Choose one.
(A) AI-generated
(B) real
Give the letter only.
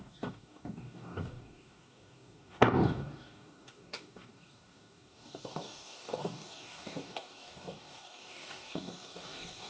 A